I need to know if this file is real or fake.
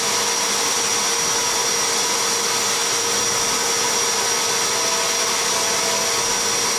real